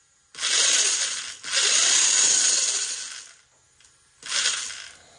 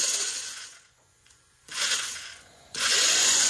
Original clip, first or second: first